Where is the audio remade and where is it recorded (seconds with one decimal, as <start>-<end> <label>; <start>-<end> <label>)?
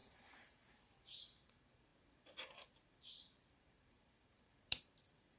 0.0-5.4 remade